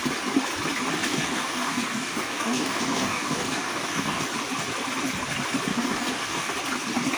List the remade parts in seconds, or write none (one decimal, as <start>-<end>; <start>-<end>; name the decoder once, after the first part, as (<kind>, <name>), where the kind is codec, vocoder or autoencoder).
1.0-4.2 (codec, DAC); 5.7-6.5